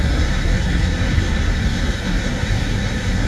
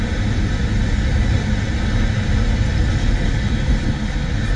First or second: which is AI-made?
first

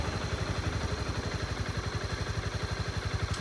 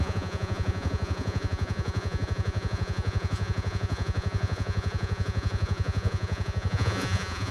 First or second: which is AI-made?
second